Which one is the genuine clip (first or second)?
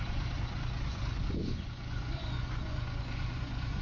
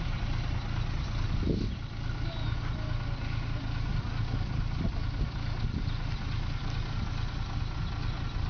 second